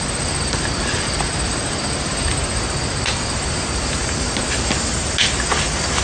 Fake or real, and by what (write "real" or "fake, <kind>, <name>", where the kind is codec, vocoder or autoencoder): real